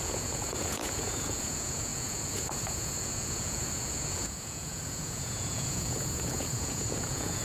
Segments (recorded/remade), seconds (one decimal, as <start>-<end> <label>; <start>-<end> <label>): 0.0-7.4 remade